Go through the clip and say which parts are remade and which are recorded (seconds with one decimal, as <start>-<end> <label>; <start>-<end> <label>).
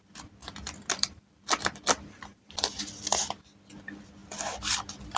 0.0-0.4 recorded; 0.4-2.8 remade; 2.8-4.2 recorded; 4.2-5.2 remade